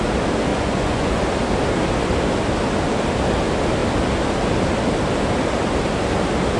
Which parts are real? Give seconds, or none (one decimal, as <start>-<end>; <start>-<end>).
0.0-0.5; 1.2-6.6

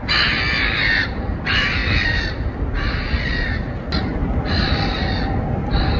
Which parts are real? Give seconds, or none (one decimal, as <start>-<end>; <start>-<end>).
0.0-6.0